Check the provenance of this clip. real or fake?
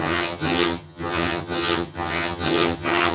fake